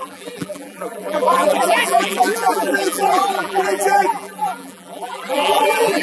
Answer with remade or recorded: remade